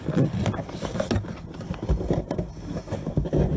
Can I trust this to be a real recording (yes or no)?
yes